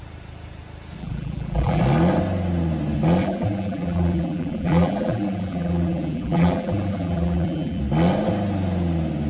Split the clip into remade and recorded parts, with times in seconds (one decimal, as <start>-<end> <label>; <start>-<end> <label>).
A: 0.0-1.0 recorded; 1.0-1.8 remade; 1.8-3.2 recorded; 3.2-7.8 remade; 7.8-9.3 recorded